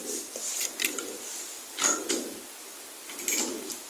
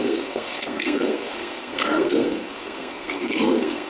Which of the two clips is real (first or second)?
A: first